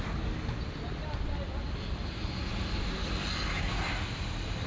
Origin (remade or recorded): recorded